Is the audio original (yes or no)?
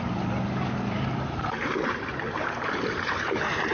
no